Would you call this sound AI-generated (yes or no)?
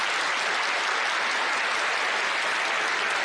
no